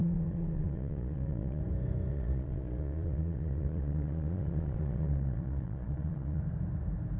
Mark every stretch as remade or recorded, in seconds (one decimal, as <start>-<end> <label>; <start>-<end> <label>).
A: 0.0-1.6 remade; 1.6-2.1 recorded; 2.1-6.4 remade; 6.4-7.2 recorded

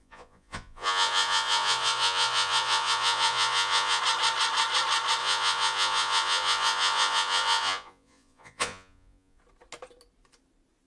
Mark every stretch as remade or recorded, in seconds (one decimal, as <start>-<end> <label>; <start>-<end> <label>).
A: 0.0-4.0 remade; 4.0-5.2 recorded; 5.2-9.4 remade; 9.4-10.9 recorded

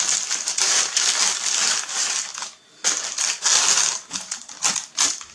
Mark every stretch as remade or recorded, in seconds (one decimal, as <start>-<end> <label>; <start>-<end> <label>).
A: 0.0-5.3 recorded

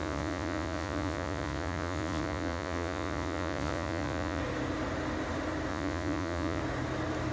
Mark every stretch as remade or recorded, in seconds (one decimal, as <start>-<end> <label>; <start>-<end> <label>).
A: 0.0-4.4 remade; 4.4-5.7 recorded; 5.7-6.6 remade; 6.6-7.3 recorded

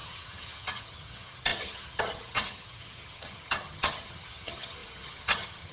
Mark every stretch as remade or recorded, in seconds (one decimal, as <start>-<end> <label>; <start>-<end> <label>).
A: 0.0-5.7 remade

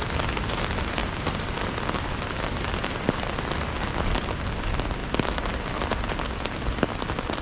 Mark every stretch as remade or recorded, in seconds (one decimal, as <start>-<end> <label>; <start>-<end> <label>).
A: 0.0-7.4 recorded

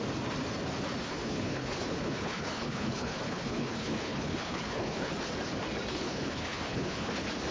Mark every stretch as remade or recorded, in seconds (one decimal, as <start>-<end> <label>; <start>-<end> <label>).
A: 0.0-1.0 recorded; 1.0-5.1 remade; 5.1-5.9 recorded; 5.9-7.1 remade; 7.1-7.5 recorded

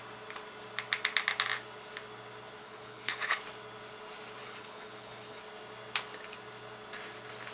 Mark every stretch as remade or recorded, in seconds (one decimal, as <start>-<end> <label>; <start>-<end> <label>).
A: 0.0-2.6 recorded; 2.6-3.4 remade; 3.4-4.4 recorded; 4.4-5.4 remade; 5.4-7.5 recorded